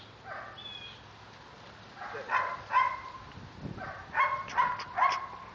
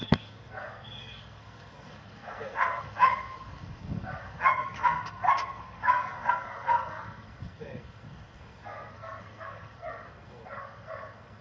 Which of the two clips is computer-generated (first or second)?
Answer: second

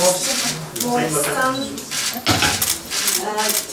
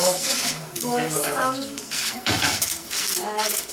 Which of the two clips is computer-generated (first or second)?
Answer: second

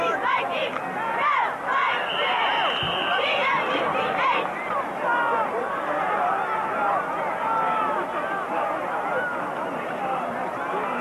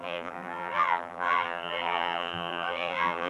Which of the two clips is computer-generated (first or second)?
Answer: second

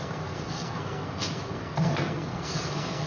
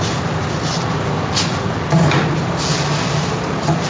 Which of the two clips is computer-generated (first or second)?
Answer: first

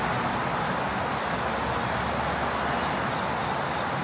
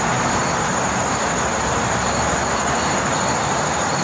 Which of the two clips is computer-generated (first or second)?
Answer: second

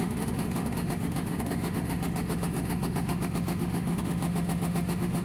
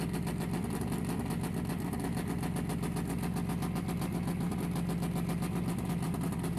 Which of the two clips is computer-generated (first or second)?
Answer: first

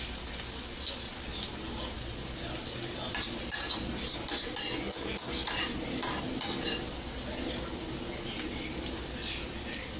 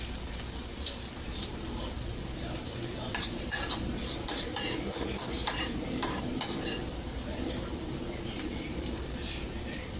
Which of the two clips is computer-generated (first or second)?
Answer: second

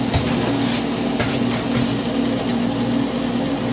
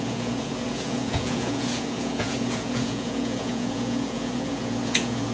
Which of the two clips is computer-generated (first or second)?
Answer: second